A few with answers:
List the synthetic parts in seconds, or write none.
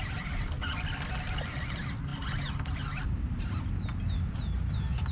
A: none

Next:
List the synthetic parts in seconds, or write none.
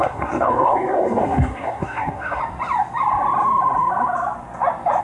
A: 0.0-2.4 (codec, SNAC)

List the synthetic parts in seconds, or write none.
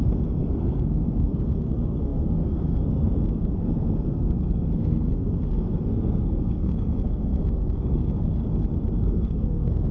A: 0.0-8.4 (codec, SNAC); 9.0-9.9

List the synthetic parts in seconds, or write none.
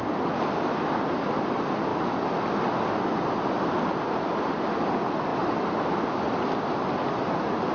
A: none